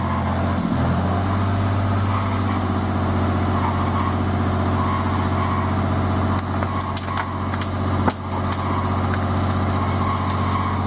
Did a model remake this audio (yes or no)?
no